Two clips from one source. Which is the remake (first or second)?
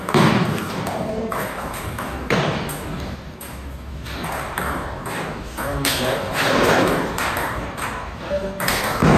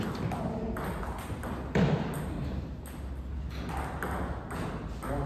first